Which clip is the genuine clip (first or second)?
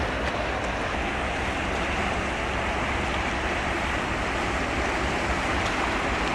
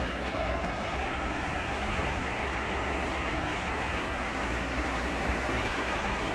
first